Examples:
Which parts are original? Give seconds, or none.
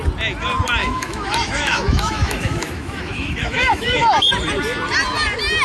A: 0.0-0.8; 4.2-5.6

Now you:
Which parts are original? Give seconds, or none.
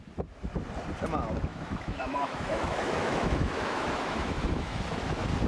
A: 0.0-1.5; 4.8-5.5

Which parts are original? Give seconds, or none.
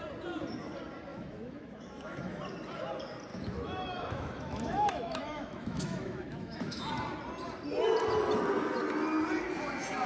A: 0.0-1.1; 2.4-3.3; 6.9-10.1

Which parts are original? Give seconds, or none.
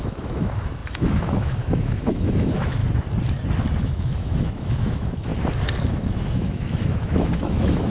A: 2.8-3.8; 5.3-5.8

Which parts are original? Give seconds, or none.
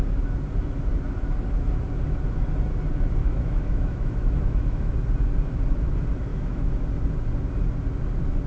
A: 0.0-3.2; 4.9-6.3; 6.8-8.5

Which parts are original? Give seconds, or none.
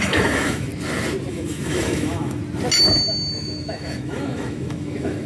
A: 0.7-1.3; 2.4-3.3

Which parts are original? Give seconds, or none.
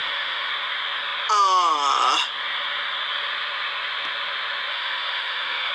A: 0.5-4.7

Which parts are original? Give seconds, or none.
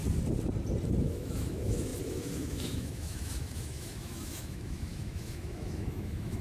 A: 0.0-1.0